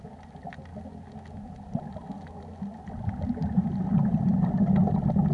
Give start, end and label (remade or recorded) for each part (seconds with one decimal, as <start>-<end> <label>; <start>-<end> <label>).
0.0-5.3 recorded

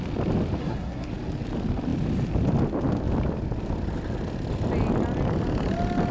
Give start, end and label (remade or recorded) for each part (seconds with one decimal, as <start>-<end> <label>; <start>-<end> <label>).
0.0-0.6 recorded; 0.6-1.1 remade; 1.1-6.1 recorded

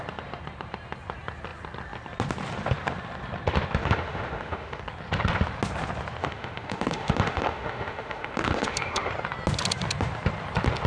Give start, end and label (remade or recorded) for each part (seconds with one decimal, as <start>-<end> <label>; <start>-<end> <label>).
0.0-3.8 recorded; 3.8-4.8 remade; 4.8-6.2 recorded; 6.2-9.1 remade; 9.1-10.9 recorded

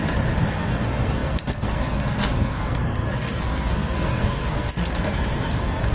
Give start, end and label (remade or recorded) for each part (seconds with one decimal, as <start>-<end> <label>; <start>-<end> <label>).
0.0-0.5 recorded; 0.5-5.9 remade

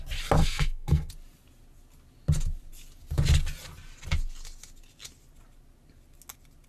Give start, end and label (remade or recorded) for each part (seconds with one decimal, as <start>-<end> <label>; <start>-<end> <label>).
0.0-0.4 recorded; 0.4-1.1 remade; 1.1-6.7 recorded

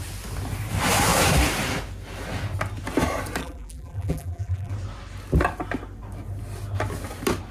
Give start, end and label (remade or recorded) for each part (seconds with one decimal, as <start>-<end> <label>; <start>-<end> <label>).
0.0-3.4 recorded; 3.4-4.7 remade; 4.7-7.5 recorded

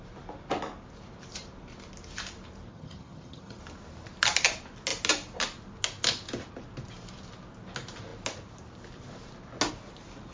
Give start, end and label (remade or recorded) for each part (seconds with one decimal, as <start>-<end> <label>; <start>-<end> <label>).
0.0-2.7 recorded; 2.7-3.6 remade; 3.6-10.3 recorded